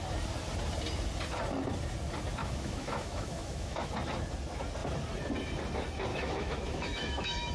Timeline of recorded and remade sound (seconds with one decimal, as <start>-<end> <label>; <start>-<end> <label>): 0.0-2.4 recorded; 2.4-3.9 remade; 3.9-6.1 recorded; 6.1-7.5 remade